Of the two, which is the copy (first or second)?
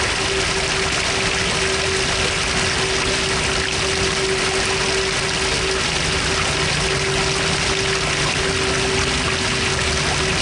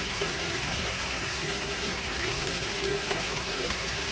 second